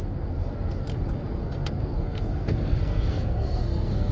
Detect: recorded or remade remade